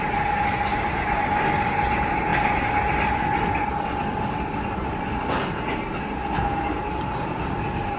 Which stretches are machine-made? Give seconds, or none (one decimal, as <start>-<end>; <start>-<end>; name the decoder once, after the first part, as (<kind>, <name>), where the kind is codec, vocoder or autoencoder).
none

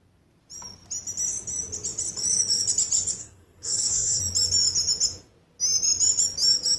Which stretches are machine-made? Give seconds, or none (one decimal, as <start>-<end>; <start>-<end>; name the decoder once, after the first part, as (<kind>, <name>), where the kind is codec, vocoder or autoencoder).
3.2-4.2 (codec, SNAC)

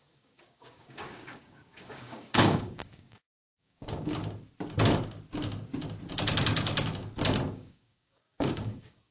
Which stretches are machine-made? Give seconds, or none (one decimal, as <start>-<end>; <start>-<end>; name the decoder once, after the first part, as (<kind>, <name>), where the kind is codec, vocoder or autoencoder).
0.0-4.2 (codec, DAC); 7.4-9.1

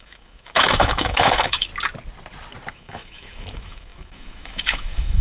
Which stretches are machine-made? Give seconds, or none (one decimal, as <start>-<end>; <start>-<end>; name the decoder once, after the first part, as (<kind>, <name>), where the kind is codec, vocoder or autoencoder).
0.0-1.7 (autoencoder, DAC-VAE); 2.7-5.2

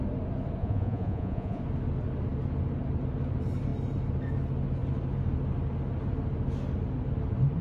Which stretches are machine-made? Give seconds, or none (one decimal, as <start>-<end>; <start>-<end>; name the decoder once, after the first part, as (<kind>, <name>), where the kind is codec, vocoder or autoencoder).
0.6-1.6 (vocoder, Vocos)